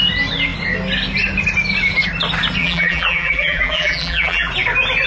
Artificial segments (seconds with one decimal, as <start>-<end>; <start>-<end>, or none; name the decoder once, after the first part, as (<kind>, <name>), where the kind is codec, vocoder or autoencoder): 2.6-4.5 (vocoder, BigVGAN v2)